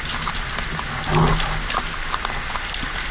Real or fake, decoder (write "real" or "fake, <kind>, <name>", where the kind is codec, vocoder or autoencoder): real